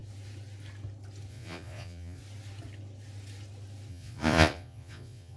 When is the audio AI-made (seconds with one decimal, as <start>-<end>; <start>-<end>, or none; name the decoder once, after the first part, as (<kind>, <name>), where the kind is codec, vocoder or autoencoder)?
1.3-2.2 (vocoder, Vocos); 3.9-5.4